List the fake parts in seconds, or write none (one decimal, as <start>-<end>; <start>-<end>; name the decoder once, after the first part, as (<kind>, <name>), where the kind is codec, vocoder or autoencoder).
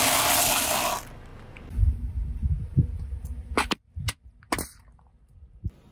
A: none